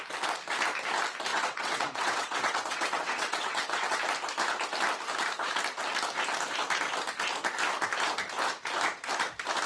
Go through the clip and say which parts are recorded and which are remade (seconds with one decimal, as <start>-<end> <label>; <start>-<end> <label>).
0.0-1.3 recorded; 1.3-4.0 remade; 4.0-9.7 recorded